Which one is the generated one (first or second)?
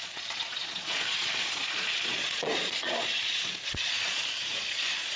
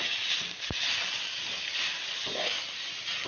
first